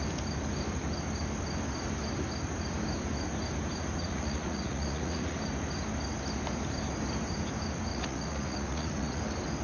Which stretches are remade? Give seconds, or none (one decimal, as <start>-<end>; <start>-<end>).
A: 4.0-5.4; 7.9-9.2